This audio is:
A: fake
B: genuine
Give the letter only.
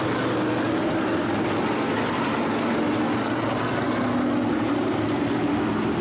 B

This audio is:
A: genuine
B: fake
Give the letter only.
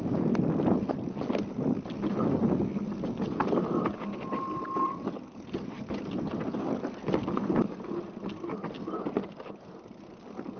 A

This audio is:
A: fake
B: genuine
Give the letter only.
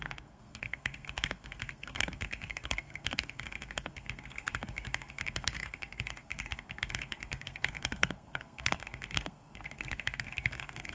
A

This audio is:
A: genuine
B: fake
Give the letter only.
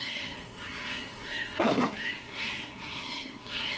B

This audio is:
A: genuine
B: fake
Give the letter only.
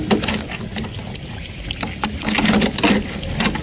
A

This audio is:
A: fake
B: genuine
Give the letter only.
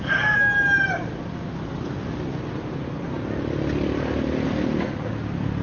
B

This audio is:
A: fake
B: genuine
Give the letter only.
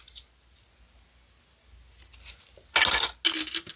B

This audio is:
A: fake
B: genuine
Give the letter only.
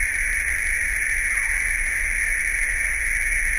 B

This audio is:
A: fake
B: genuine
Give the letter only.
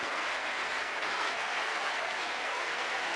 A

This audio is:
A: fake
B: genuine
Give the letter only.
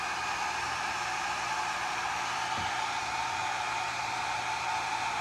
B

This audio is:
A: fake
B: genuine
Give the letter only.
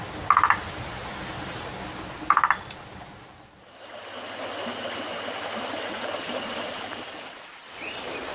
B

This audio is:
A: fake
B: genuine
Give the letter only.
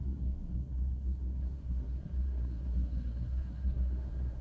A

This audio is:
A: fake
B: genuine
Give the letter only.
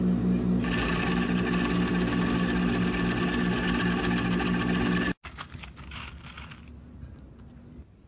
B